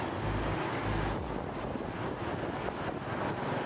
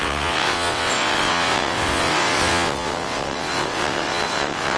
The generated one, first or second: second